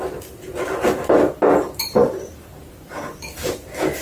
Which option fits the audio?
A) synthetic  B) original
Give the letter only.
B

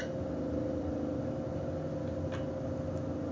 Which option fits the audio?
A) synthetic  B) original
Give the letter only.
B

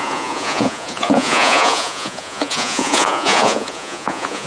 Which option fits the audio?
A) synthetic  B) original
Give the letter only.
A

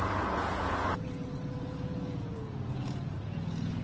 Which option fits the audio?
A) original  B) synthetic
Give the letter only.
B